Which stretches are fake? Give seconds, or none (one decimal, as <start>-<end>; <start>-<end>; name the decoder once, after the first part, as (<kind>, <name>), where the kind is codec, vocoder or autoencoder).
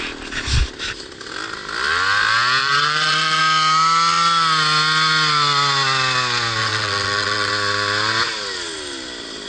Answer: 2.6-3.4 (vocoder, WaveNeXt); 6.6-7.5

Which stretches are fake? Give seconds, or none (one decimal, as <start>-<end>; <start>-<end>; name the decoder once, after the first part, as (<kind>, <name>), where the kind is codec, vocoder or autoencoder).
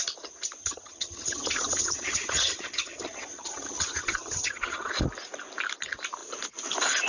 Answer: 0.6-4.9 (vocoder, HiFi-GAN)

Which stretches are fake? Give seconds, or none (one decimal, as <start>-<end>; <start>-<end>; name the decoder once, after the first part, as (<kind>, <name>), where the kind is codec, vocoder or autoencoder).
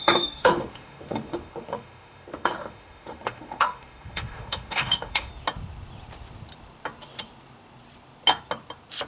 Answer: 0.0-5.3 (autoencoder, DAC-VAE)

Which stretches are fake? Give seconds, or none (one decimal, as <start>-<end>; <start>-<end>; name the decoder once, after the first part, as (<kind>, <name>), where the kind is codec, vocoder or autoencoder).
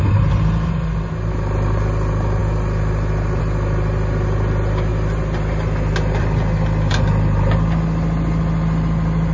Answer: none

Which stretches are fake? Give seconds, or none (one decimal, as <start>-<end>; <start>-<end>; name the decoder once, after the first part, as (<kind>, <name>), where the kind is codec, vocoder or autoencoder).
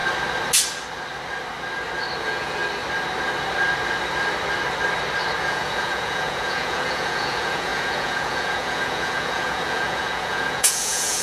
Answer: 2.2-2.6 (vocoder, Vocos); 5.4-11.2